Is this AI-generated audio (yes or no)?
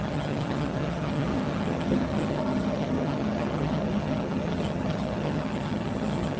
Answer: yes